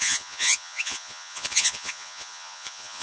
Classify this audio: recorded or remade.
remade